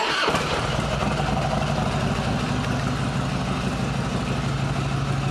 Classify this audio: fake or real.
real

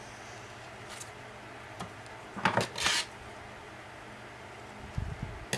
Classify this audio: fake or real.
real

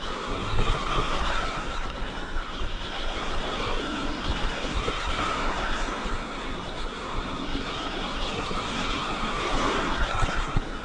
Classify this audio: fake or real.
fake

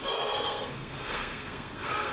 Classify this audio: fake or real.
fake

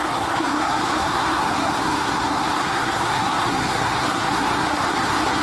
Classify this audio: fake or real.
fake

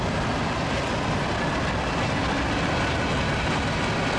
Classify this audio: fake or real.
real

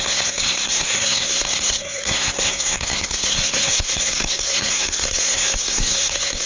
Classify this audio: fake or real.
fake